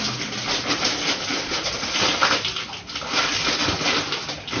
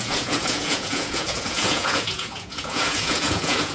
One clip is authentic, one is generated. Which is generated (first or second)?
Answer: second